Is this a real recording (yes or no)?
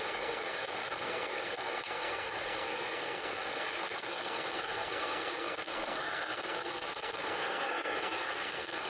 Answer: no